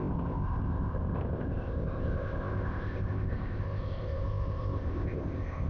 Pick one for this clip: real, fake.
fake